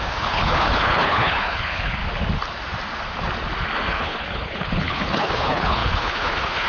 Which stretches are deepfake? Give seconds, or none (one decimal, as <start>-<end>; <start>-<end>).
0.0-2.0; 3.9-6.7